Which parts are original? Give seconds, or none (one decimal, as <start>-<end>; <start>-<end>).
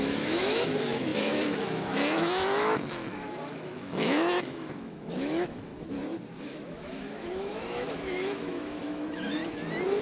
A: 5.7-6.4; 9.4-10.0